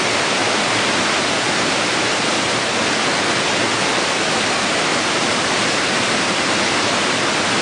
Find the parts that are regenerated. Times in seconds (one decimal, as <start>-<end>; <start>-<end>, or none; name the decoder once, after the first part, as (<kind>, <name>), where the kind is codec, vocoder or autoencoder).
4.9-6.6 (vocoder, BigVGAN v2)